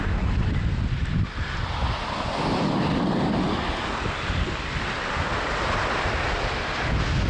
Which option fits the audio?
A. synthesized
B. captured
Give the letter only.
B